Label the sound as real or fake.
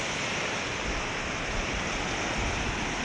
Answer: real